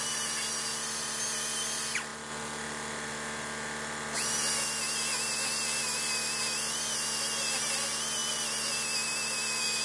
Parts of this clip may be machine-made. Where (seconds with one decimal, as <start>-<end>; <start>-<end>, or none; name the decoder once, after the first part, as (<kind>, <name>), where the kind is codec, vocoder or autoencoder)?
none